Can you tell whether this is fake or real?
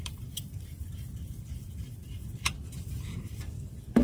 fake